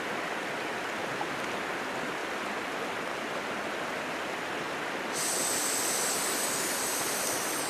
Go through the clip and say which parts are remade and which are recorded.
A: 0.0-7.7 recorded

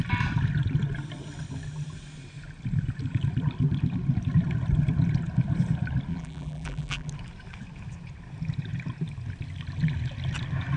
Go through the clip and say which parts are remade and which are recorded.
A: 0.0-6.1 recorded; 6.1-7.1 remade; 7.1-10.8 recorded

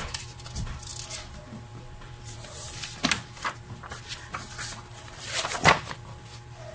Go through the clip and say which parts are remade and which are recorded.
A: 0.0-0.9 remade; 0.9-3.7 recorded; 3.7-6.7 remade